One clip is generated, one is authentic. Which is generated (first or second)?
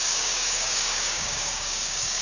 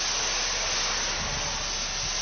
first